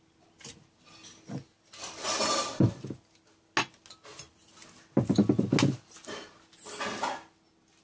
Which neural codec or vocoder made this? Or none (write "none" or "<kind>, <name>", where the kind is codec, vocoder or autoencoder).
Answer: none